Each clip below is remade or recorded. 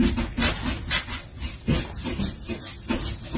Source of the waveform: recorded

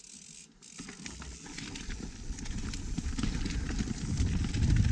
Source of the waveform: recorded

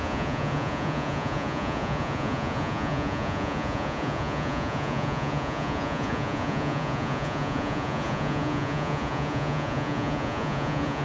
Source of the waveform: remade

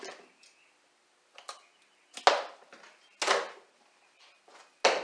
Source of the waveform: recorded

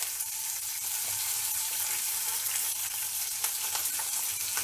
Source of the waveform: remade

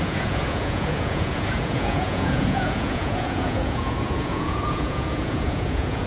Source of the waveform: remade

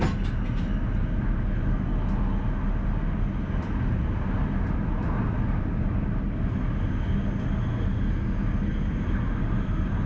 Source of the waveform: recorded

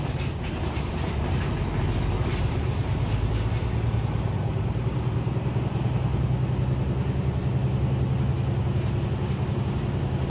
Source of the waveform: recorded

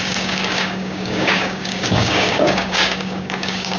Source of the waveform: remade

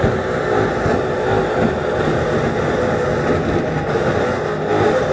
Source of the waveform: recorded